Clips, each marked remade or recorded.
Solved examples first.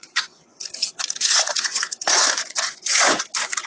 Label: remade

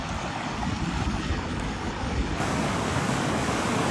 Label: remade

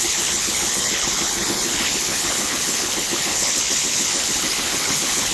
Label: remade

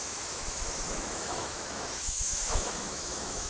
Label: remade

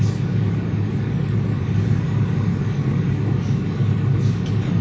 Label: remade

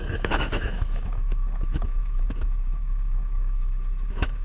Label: remade